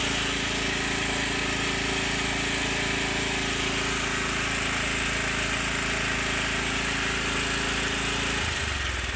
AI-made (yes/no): no